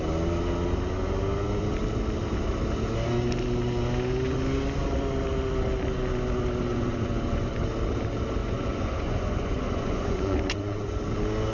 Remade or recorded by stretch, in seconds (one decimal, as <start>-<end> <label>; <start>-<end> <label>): 0.0-6.7 recorded; 6.7-7.5 remade; 7.5-8.4 recorded; 8.4-11.0 remade; 11.0-11.5 recorded